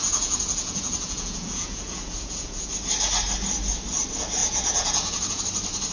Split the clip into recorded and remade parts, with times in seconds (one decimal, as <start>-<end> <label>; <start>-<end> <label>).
0.0-2.7 remade; 2.7-4.4 recorded; 4.4-5.4 remade; 5.4-5.9 recorded